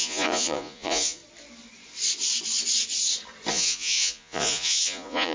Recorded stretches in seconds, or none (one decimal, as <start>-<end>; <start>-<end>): 1.2-3.5